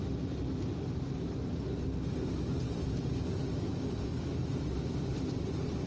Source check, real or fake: real